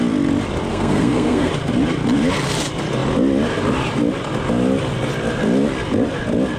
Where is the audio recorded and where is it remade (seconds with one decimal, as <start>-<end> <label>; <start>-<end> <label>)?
0.0-0.7 recorded; 0.7-1.5 remade; 1.5-6.6 recorded